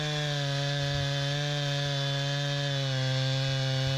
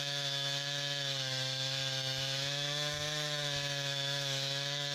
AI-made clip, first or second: second